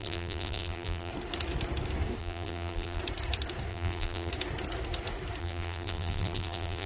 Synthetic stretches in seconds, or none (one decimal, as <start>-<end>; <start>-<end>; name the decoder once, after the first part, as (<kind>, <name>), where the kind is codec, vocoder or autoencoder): 0.0-1.1 (vocoder, BigVGAN v2); 2.2-3.0; 3.7-4.3; 5.4-6.9